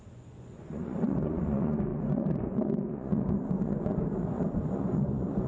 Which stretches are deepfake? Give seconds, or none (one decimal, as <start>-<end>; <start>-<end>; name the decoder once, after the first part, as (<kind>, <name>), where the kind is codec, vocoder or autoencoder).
0.0-5.5 (vocoder, Vocos)